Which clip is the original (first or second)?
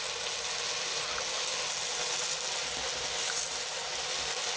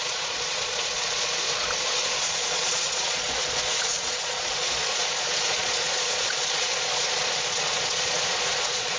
first